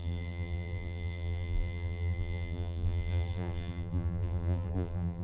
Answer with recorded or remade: remade